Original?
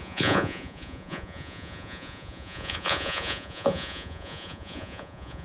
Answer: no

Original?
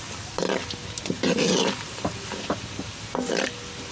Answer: yes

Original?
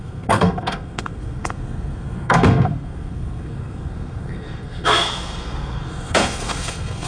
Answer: no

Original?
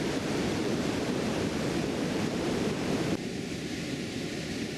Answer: no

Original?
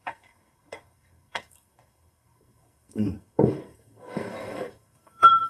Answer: no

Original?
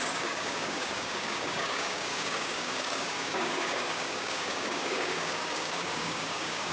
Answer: no